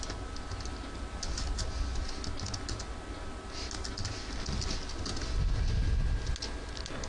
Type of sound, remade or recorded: recorded